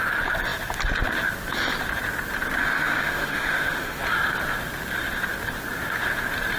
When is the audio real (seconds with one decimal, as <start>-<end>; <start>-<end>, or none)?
0.0-2.6; 4.0-6.6

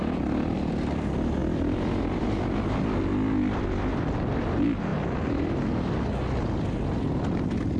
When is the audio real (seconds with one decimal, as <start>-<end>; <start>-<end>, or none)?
0.0-7.8

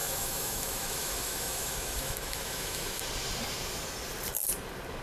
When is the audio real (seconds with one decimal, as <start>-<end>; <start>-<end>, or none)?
3.0-5.0

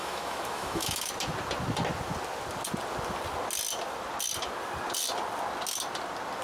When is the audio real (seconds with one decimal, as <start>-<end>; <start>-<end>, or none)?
1.1-6.4

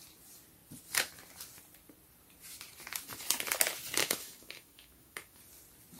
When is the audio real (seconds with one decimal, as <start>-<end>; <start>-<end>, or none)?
0.0-4.0; 5.4-6.0

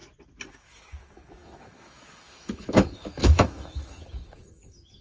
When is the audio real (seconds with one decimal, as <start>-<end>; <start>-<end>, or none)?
0.0-0.5

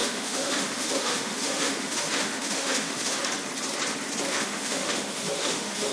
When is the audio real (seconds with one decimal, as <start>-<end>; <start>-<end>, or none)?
3.2-4.3